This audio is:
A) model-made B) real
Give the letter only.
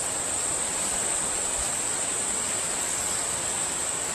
B